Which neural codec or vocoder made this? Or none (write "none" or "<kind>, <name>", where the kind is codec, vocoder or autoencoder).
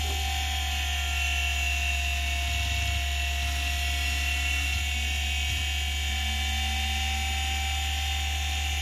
none